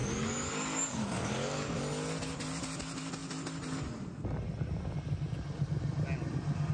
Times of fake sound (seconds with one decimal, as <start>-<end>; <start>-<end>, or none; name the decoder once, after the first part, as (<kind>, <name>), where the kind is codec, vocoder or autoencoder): 0.0-1.8 (codec, DAC)